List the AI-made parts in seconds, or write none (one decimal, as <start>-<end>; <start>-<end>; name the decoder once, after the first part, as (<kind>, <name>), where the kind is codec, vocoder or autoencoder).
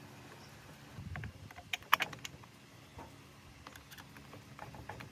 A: none